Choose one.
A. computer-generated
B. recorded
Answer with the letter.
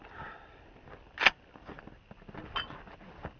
B